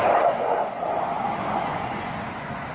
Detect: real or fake fake